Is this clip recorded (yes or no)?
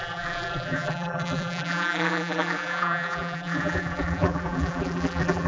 no